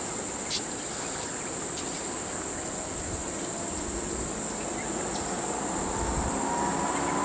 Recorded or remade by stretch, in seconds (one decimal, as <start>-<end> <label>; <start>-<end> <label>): 0.0-7.2 recorded